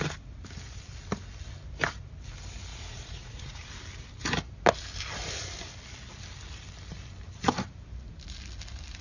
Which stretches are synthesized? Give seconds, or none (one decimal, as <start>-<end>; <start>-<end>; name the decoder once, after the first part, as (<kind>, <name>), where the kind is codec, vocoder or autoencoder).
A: 2.7-3.7 (vocoder, Vocos)